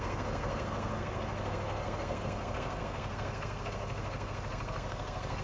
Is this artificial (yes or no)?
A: yes